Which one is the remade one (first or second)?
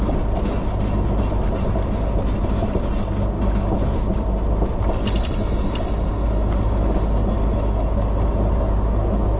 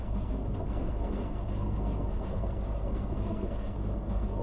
second